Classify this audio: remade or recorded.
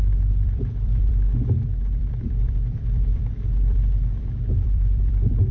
remade